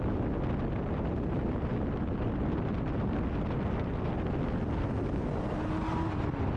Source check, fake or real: real